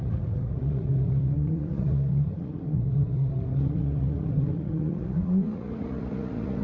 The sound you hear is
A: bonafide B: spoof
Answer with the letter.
B